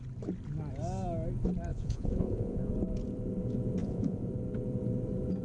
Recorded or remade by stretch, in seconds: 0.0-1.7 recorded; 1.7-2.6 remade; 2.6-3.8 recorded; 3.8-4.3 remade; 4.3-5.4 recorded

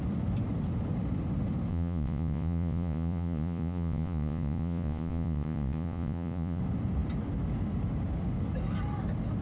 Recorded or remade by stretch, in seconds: 0.0-1.7 recorded; 1.7-6.6 remade; 6.6-9.4 recorded

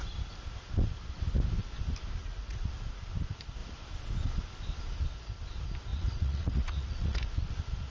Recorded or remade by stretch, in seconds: 0.0-2.2 recorded; 2.2-2.7 remade; 2.7-5.9 recorded; 5.9-7.3 remade; 7.3-7.9 recorded